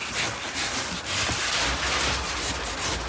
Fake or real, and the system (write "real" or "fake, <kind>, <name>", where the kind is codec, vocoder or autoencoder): real